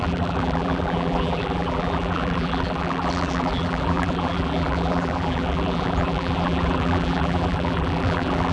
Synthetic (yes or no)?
yes